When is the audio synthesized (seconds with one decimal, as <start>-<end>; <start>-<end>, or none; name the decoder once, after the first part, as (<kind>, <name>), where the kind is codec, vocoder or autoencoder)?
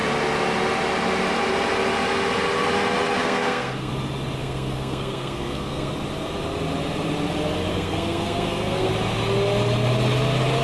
3.2-3.9 (codec, SNAC); 4.4-5.9; 7.7-8.9